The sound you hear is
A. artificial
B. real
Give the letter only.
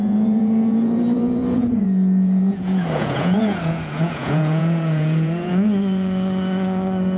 A